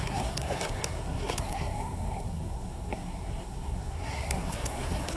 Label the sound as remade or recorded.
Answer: remade